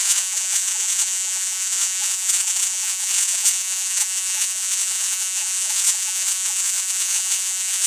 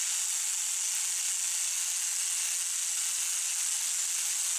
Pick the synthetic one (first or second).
first